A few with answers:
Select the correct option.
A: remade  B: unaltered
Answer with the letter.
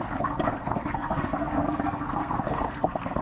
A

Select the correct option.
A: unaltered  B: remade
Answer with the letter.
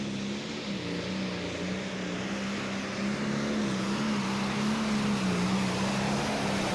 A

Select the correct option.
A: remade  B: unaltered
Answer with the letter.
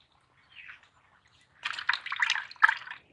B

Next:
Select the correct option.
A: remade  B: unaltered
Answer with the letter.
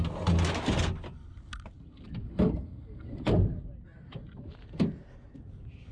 B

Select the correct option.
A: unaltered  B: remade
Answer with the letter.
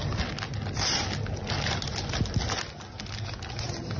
A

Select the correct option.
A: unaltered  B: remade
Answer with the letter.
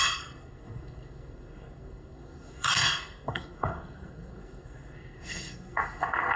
B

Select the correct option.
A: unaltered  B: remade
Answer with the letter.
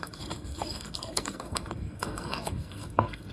B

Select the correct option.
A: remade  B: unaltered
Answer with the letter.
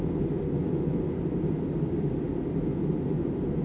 B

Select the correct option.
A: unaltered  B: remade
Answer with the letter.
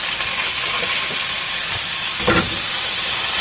A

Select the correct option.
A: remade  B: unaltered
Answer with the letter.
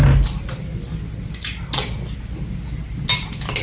B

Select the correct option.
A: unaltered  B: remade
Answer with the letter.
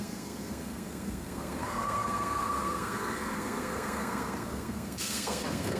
B